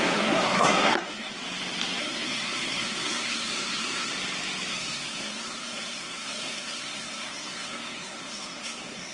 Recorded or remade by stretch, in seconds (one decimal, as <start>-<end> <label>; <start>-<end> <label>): 0.0-1.3 remade; 1.3-2.0 recorded; 2.0-4.1 remade; 4.1-4.7 recorded; 4.7-9.1 remade